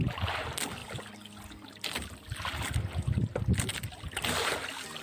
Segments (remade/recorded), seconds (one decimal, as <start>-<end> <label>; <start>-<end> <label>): 0.0-5.0 recorded